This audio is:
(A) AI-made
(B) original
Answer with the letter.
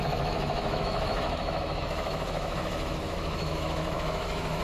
A